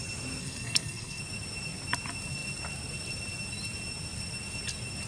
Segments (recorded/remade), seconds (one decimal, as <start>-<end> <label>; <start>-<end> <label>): 0.0-0.4 recorded; 0.4-1.2 remade; 1.2-5.1 recorded